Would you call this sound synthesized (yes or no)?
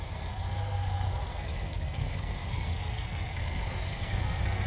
yes